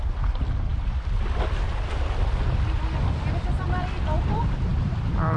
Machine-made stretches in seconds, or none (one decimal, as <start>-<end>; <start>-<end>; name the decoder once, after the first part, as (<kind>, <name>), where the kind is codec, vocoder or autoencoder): none